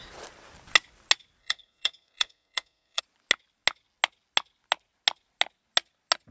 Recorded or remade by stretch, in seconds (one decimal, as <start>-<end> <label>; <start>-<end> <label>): 0.0-1.4 recorded; 1.4-3.0 remade; 3.0-6.3 recorded